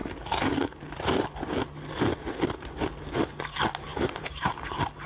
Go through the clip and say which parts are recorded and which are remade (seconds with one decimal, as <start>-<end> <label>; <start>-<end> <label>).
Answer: 0.0-3.9 recorded; 3.9-4.5 remade; 4.5-5.1 recorded